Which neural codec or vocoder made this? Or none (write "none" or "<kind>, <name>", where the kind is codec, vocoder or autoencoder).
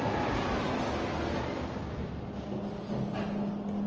none